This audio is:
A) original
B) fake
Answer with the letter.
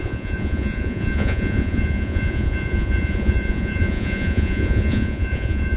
B